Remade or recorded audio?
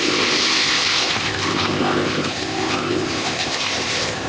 remade